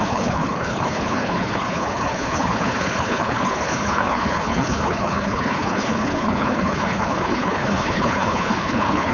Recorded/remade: remade